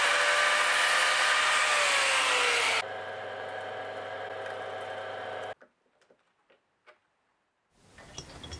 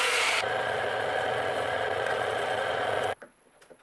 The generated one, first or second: second